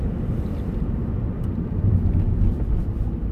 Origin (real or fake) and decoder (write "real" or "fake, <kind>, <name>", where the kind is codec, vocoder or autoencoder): fake, vocoder, BigVGAN v2